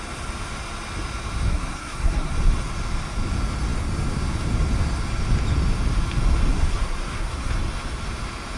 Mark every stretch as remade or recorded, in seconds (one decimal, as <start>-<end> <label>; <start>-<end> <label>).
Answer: 0.0-1.5 recorded; 1.5-2.3 remade; 2.3-6.5 recorded; 6.5-7.5 remade; 7.5-8.6 recorded